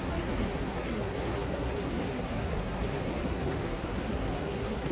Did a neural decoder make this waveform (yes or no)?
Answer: yes